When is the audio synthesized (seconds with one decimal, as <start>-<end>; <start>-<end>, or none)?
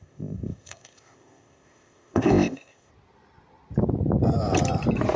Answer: 0.0-2.9